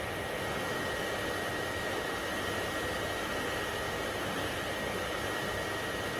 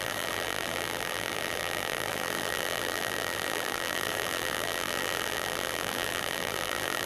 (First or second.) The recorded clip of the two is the first